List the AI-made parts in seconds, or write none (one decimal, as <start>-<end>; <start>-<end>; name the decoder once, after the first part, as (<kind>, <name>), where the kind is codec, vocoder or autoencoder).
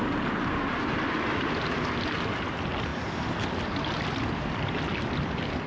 none